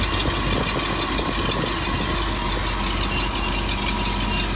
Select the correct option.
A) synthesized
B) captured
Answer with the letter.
B